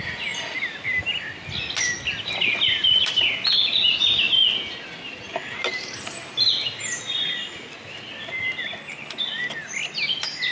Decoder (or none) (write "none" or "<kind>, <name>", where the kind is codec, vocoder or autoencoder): none